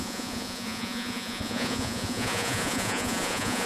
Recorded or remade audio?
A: remade